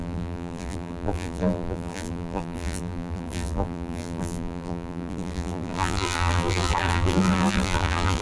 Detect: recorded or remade remade